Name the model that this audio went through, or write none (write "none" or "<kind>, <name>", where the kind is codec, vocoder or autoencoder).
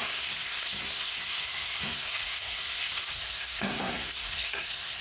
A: codec, SNAC